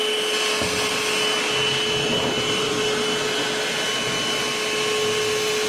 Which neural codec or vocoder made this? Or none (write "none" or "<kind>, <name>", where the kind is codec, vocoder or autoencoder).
none